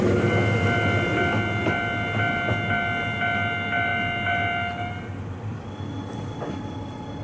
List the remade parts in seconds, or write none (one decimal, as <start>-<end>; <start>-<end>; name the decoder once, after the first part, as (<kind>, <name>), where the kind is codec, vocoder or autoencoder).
none